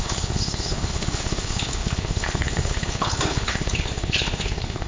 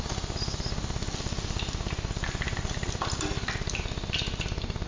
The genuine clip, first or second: second